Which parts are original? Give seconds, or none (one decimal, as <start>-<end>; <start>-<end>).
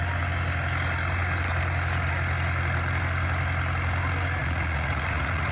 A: 0.0-4.4